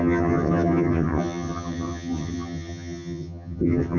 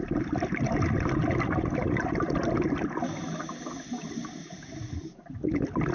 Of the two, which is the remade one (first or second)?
first